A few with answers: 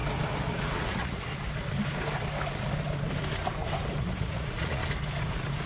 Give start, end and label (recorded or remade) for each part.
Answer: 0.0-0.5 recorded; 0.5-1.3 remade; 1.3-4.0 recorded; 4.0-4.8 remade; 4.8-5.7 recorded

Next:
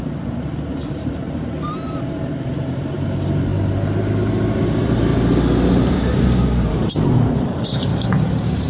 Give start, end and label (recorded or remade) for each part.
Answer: 0.0-3.5 remade; 3.5-4.6 recorded; 4.6-5.1 remade; 5.1-6.7 recorded; 6.7-7.9 remade; 7.9-8.7 recorded

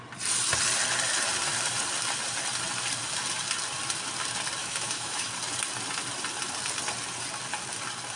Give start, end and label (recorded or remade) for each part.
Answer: 0.0-4.6 recorded; 4.6-5.3 remade; 5.3-8.2 recorded

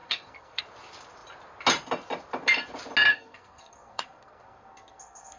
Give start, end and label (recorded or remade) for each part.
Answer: 0.0-0.6 remade; 0.6-3.1 recorded; 3.1-5.4 remade

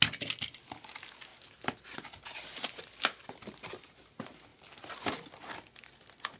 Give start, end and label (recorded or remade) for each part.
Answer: 0.0-6.4 recorded

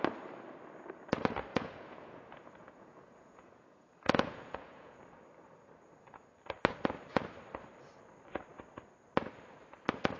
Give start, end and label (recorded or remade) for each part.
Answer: 0.0-1.5 recorded; 1.5-5.0 remade; 5.0-10.2 recorded